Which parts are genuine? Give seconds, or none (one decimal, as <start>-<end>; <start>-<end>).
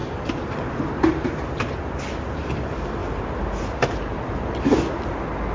0.0-5.5